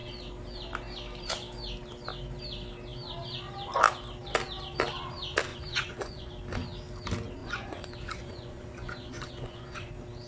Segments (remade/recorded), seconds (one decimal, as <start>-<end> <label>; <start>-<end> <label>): 0.0-5.5 recorded; 5.5-6.3 remade; 6.3-7.4 recorded; 7.4-9.9 remade; 9.9-10.3 recorded